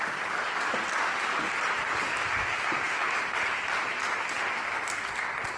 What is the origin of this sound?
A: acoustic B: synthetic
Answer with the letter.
A